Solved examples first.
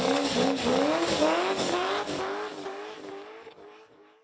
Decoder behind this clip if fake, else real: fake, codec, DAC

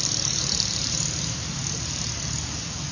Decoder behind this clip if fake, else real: real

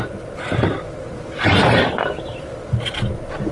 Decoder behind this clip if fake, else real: real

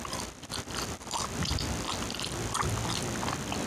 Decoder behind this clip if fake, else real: real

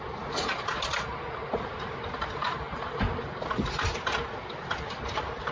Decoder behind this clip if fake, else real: real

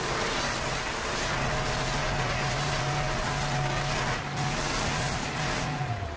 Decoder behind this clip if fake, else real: real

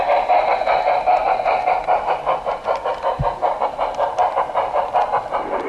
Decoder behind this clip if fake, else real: fake, vocoder, BigVGAN v2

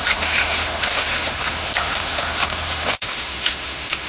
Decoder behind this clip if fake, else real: fake, autoencoder, DAC-VAE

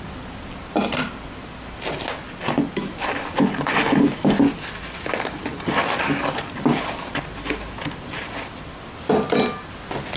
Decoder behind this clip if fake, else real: real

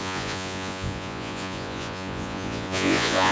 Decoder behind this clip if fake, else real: fake, vocoder, Vocos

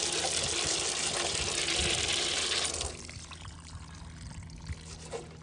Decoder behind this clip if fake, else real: real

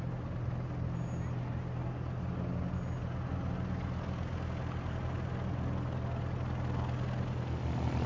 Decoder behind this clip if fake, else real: real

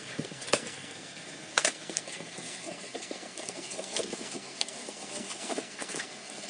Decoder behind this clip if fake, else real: fake, codec, SNAC